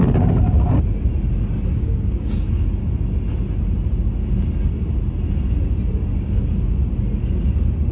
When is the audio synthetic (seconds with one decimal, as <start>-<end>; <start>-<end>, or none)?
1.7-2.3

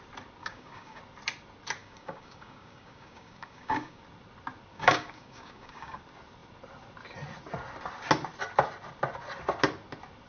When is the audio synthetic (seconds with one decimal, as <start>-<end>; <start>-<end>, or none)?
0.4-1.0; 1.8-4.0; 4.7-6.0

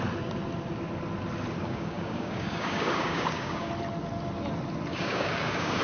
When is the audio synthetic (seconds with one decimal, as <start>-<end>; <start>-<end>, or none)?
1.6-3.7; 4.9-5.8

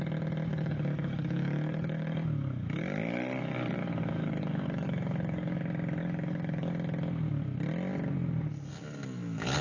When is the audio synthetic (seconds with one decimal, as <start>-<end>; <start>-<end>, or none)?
0.5-5.6; 6.0-6.7

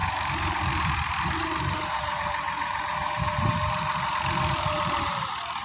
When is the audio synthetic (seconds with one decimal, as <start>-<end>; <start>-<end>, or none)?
none

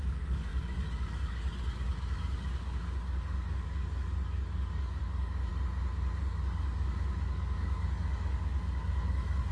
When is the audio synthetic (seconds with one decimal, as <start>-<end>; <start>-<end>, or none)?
0.0-5.5; 6.2-9.5